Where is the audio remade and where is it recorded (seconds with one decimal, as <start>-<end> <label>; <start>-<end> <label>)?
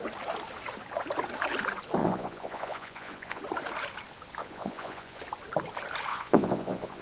0.0-2.0 recorded; 2.0-3.4 remade; 3.4-4.4 recorded; 4.4-5.2 remade; 5.2-6.1 recorded; 6.1-7.0 remade